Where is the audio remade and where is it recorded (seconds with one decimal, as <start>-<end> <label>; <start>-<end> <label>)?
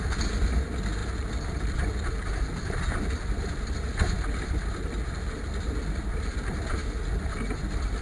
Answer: 0.0-8.0 recorded